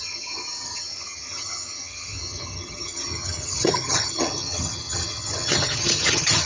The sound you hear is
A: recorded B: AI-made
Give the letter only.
B